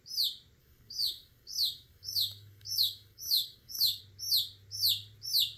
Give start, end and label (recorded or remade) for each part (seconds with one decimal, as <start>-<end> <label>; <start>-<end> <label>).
0.0-0.6 recorded; 0.6-4.0 remade; 4.0-5.6 recorded